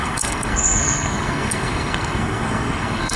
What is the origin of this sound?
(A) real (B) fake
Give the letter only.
B